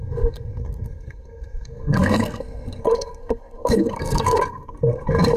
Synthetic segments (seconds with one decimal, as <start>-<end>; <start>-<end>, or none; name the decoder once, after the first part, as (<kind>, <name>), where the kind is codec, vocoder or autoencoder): 0.0-5.4 (codec, SNAC)